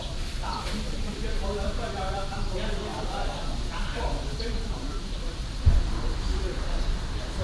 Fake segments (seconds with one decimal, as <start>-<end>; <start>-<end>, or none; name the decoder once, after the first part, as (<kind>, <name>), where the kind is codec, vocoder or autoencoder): 0.0-2.9 (vocoder, BigVGAN v2); 4.4-7.4